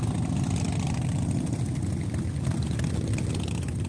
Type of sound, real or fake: real